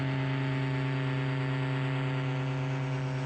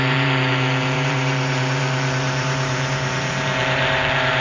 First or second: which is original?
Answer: first